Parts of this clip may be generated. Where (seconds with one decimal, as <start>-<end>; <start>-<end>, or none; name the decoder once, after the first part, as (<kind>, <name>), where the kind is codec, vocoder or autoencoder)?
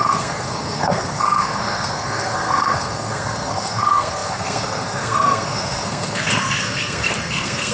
0.0-7.7 (codec, SNAC)